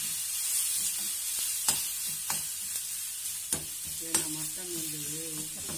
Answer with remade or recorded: recorded